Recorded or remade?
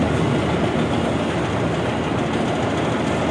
recorded